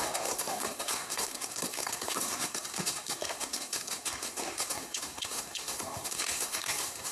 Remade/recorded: remade